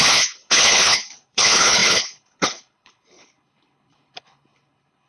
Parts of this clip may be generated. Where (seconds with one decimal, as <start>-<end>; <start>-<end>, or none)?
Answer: 0.0-5.1